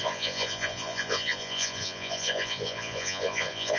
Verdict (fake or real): fake